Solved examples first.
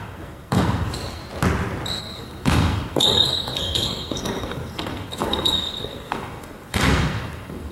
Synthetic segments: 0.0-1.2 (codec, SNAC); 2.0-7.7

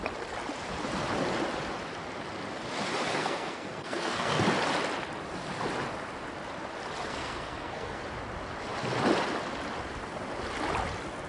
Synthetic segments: 3.1-4.4 (codec, SNAC); 7.0-8.0